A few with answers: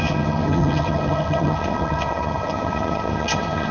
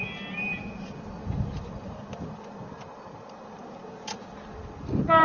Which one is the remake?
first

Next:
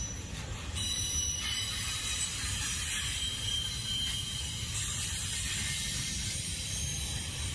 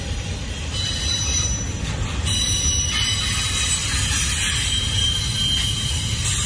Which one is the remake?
first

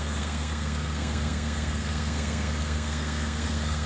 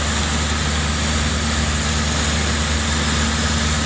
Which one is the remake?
first